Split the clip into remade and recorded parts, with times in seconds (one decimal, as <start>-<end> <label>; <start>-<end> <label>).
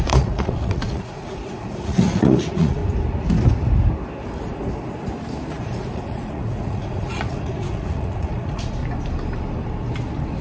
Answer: 0.0-2.8 remade; 2.8-5.6 recorded; 5.6-8.8 remade; 8.8-10.4 recorded